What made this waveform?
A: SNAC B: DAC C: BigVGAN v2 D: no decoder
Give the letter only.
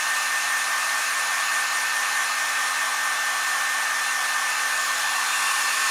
D